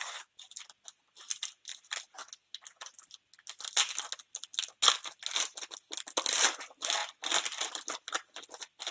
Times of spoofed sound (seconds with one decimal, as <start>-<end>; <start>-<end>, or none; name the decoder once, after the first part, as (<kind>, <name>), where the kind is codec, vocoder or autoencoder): none